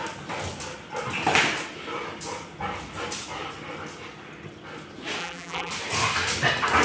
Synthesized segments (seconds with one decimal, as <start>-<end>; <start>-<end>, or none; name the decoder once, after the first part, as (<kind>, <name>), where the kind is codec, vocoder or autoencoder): 5.2-5.7 (vocoder, BigVGAN v2)